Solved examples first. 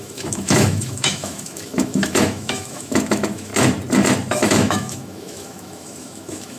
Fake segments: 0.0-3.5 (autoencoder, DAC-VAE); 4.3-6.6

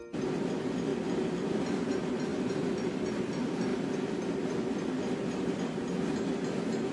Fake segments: 0.9-1.9 (vocoder, BigVGAN v2); 2.3-3.2

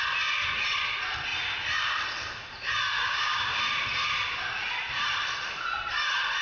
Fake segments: 3.0-3.6 (codec, DAC)

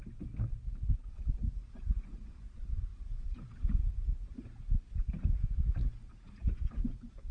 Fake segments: 6.4-7.3 (vocoder, BigVGAN v2)